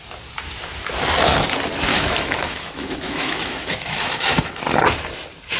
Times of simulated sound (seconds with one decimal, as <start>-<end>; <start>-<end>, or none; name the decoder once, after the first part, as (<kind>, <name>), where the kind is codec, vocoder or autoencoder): 1.9-4.5 (autoencoder, DAC-VAE)